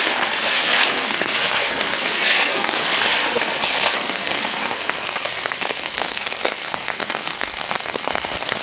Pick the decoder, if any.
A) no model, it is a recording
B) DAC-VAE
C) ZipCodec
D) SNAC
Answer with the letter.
D